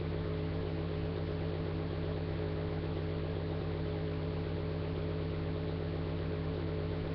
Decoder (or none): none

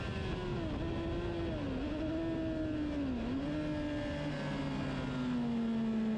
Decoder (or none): none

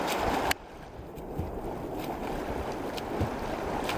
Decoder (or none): none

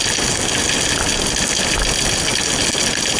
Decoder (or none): none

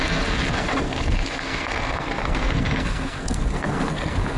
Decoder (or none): codec, SNAC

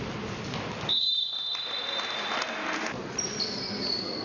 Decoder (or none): none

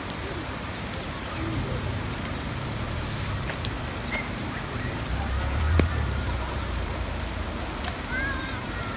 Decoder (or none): vocoder, BigVGAN v2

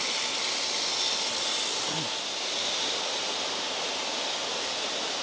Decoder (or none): none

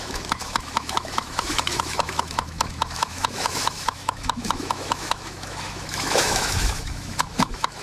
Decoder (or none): autoencoder, DAC-VAE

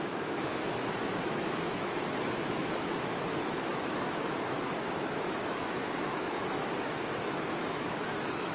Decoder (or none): autoencoder, DAC-VAE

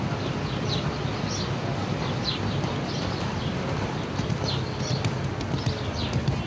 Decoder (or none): none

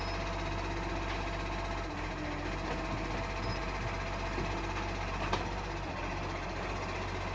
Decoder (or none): none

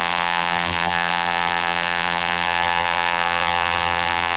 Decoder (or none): vocoder, BigVGAN v2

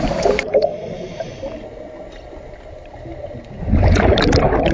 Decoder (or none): none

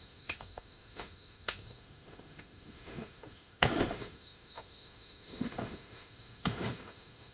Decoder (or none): autoencoder, DAC-VAE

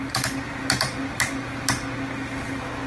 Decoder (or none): none